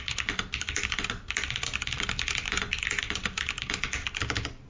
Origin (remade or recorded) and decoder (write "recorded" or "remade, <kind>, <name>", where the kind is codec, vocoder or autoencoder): recorded